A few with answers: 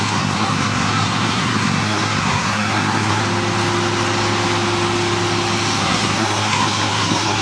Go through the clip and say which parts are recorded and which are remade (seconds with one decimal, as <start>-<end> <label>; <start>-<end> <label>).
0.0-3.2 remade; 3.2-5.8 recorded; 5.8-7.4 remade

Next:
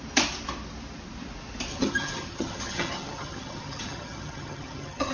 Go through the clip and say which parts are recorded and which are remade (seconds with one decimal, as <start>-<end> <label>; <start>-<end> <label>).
0.0-1.7 recorded; 1.7-5.1 remade

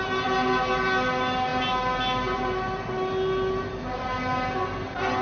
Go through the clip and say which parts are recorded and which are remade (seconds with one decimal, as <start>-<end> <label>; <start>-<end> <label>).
0.0-5.2 recorded

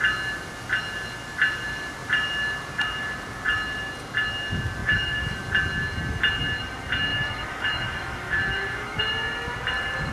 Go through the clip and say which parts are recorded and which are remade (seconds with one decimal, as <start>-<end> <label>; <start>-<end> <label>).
0.0-4.8 recorded; 4.8-5.4 remade; 5.4-7.1 recorded; 7.1-9.0 remade; 9.0-10.1 recorded